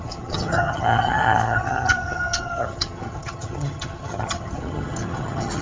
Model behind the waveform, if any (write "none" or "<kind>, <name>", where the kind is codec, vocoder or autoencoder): vocoder, HiFi-GAN